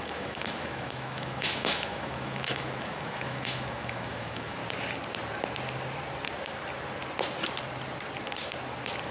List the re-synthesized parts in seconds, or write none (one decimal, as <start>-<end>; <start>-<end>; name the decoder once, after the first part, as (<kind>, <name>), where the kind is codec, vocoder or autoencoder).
0.0-4.6 (autoencoder, DAC-VAE)